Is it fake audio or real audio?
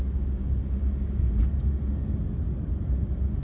real